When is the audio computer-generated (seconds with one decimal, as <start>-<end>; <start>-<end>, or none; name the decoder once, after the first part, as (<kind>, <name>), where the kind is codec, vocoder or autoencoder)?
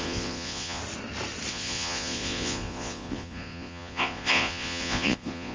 0.0-0.8 (vocoder, Vocos); 1.5-5.5